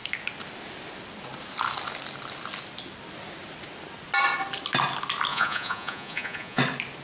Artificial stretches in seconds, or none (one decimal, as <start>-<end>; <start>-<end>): 5.3-6.6

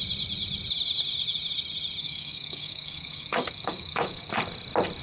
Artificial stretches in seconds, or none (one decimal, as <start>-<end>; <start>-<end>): 2.0-4.3

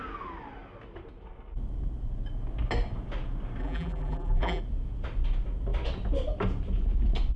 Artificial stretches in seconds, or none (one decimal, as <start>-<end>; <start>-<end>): 3.6-4.6

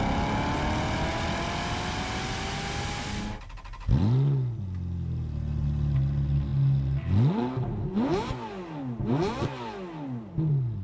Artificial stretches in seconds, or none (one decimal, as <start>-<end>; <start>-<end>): none

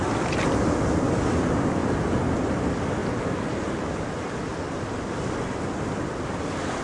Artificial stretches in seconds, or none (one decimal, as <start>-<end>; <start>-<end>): none

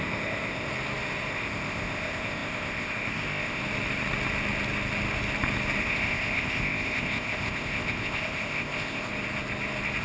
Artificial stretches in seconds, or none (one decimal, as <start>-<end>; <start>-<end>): 0.0-0.7; 1.3-3.6; 5.8-9.1

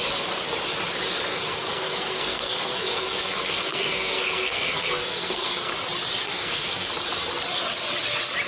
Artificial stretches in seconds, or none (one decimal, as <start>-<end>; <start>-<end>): 1.3-5.7; 6.2-6.9